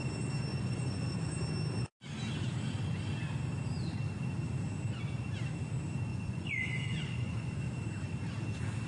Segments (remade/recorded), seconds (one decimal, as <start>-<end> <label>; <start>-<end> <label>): 0.0-0.5 recorded; 0.5-1.3 remade; 1.3-6.1 recorded; 6.1-7.5 remade; 7.5-8.9 recorded